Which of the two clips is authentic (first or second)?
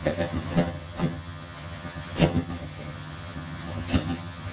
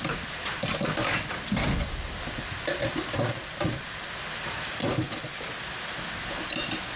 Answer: second